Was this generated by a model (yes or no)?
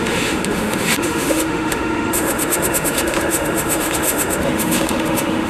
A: yes